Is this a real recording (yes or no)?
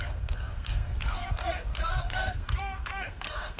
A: no